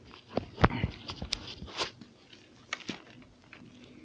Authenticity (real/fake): real